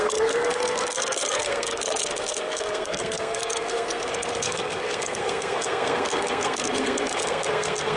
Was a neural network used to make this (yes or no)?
yes